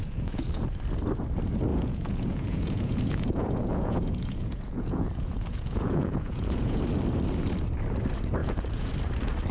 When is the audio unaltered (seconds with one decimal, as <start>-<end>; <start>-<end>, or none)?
0.6-1.7; 6.8-8.4; 8.9-9.5